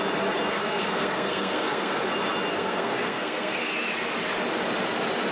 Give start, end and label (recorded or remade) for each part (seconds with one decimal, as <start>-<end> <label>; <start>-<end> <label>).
0.0-0.6 recorded; 0.6-2.0 remade; 2.0-2.5 recorded; 2.5-3.7 remade; 3.7-5.3 recorded